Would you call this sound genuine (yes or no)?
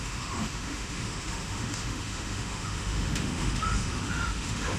no